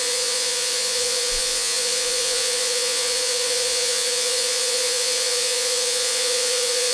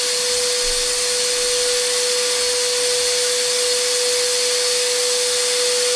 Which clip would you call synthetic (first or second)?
first